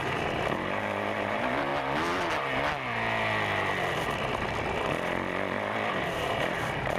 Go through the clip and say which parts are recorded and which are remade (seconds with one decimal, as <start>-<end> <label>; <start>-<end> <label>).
0.0-1.7 remade; 1.7-5.9 recorded; 5.9-7.0 remade